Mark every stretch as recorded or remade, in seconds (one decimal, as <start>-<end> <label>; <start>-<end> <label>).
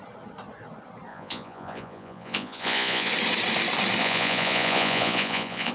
0.0-1.1 recorded; 1.1-3.1 remade; 3.1-4.0 recorded; 4.0-5.7 remade